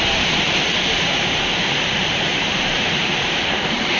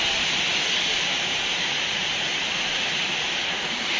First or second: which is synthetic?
first